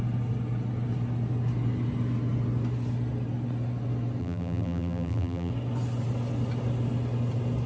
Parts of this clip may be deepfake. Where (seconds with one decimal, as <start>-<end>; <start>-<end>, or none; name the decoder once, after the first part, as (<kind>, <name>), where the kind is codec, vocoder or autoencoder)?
4.2-5.5 (vocoder, BigVGAN v2)